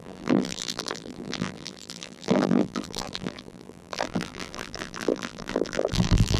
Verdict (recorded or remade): remade